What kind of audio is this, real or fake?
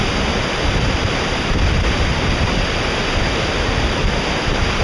real